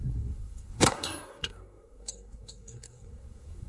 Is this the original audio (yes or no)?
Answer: no